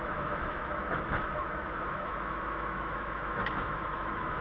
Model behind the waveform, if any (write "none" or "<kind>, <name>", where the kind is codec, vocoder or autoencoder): autoencoder, DAC-VAE